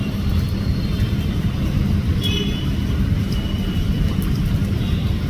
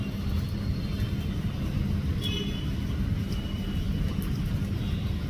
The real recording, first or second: second